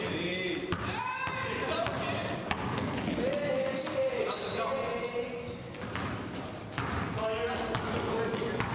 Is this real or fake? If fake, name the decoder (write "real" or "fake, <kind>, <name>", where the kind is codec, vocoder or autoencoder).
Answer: real